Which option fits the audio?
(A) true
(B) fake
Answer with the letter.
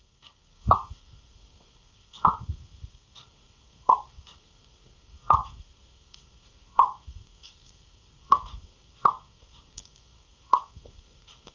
B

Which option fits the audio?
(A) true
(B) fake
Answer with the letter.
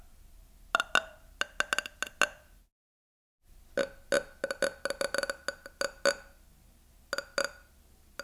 A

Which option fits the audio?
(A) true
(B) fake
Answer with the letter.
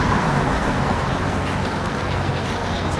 B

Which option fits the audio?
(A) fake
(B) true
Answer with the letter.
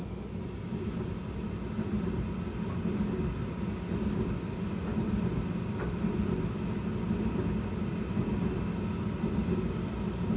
B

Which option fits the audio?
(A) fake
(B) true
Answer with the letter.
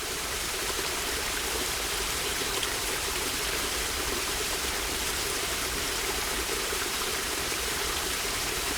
A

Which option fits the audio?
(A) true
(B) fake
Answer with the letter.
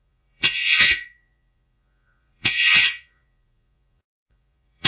B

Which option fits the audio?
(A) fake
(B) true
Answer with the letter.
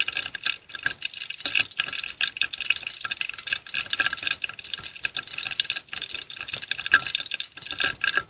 B